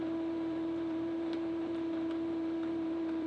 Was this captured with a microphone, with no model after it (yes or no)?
no